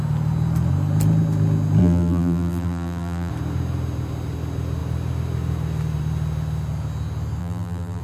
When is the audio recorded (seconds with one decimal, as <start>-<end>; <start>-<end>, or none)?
0.0-1.8; 3.3-7.4

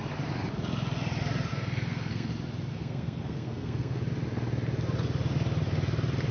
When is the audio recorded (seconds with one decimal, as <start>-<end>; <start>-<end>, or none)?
0.0-1.5; 2.3-2.7; 4.0-6.3

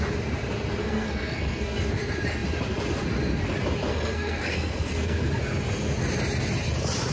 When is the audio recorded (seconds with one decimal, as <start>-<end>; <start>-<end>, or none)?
0.0-0.8; 2.0-3.9; 5.3-7.1

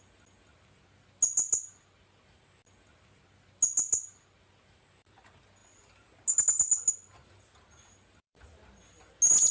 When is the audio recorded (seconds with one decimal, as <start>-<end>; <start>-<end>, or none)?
0.0-9.5

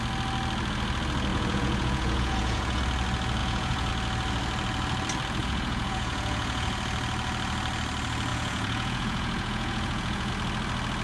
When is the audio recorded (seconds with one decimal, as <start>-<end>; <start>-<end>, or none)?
0.0-1.3; 2.8-3.4; 3.9-5.4; 6.7-8.3; 10.3-11.0

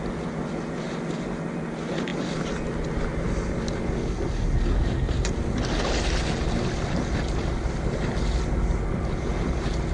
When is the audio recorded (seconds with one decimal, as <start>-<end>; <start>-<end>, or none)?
0.0-9.9

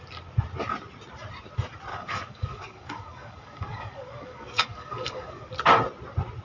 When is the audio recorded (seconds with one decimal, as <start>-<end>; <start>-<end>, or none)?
0.0-1.9; 5.5-6.4